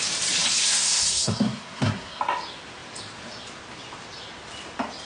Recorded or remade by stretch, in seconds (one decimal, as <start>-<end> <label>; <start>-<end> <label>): 0.0-0.6 recorded; 0.6-2.2 remade; 2.2-5.0 recorded